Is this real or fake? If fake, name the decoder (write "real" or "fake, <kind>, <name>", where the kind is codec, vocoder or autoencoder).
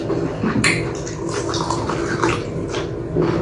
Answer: real